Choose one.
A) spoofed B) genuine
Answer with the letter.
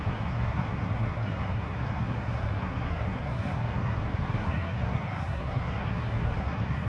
A